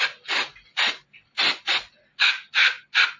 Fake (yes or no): no